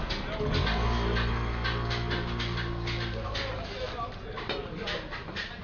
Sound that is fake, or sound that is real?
real